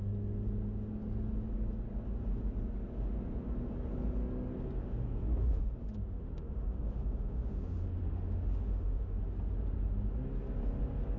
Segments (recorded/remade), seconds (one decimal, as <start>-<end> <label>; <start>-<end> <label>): 0.0-4.8 recorded; 4.8-9.2 remade; 9.2-11.2 recorded